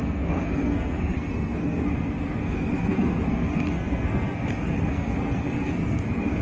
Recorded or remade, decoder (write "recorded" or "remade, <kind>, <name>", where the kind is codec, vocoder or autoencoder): remade, codec, SNAC